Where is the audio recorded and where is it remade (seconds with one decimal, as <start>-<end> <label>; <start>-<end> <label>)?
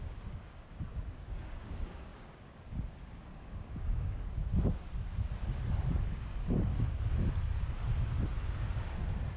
0.0-4.4 remade; 4.4-9.4 recorded